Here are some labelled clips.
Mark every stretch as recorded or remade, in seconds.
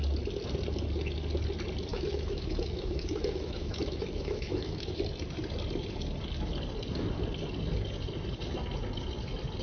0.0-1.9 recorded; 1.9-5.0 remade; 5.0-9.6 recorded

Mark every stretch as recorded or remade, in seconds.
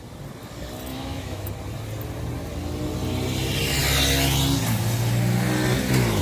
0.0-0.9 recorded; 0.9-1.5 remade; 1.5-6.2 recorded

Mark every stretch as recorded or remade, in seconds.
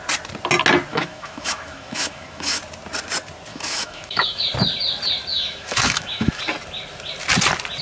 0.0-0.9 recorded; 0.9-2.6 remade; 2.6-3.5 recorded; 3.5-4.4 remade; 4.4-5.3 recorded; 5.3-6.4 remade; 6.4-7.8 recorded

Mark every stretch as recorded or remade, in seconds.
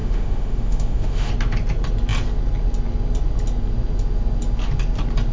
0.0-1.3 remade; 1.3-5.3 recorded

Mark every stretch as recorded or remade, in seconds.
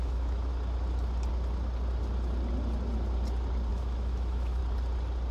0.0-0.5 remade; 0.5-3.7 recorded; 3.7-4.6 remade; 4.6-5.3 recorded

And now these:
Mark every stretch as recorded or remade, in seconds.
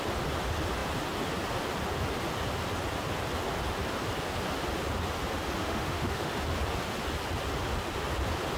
0.0-5.6 recorded; 5.6-6.4 remade; 6.4-8.6 recorded